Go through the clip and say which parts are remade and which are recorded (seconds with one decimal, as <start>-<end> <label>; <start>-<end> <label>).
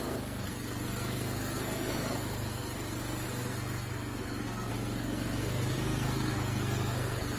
0.0-7.4 remade